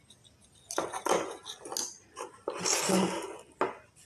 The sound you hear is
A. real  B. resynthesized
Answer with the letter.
A